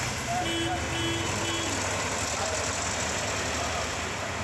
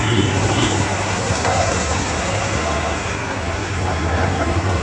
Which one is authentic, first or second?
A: first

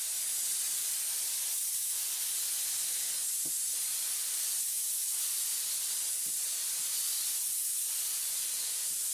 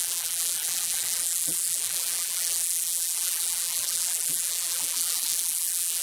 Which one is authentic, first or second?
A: first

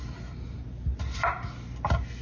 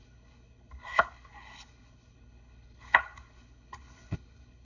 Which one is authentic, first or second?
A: first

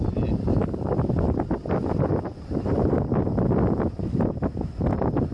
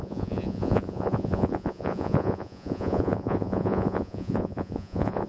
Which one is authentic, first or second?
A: first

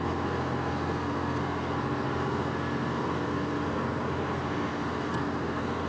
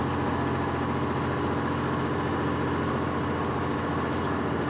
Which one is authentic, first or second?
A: second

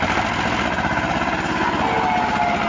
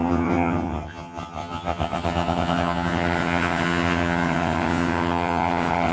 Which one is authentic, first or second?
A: first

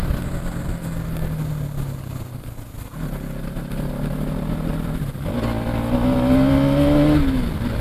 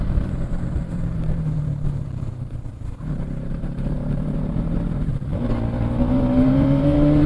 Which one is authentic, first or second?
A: first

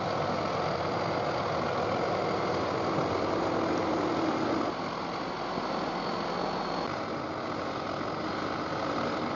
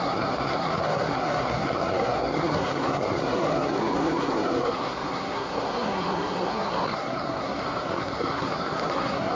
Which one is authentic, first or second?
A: first